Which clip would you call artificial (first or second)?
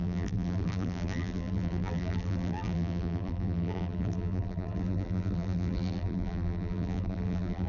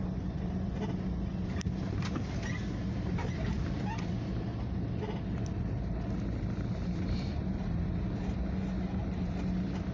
first